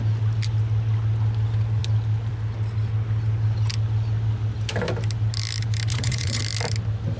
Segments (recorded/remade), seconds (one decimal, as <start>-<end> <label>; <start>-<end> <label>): 0.0-5.9 recorded; 5.9-6.4 remade; 6.4-7.2 recorded